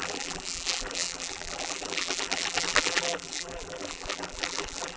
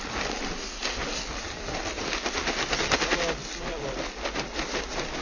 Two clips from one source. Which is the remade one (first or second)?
first